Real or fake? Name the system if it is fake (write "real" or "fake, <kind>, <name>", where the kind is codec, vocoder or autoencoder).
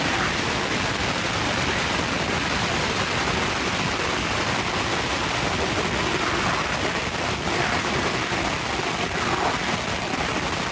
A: real